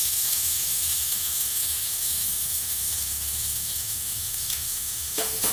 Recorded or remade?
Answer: remade